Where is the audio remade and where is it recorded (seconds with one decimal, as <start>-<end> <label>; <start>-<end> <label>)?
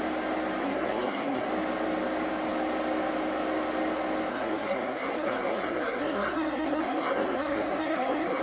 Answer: 0.0-0.6 recorded; 0.6-1.5 remade; 1.5-4.3 recorded; 4.3-8.4 remade